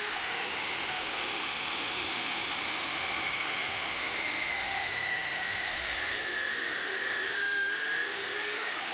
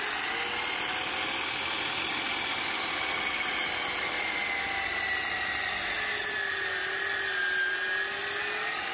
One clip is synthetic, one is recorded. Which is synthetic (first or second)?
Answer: first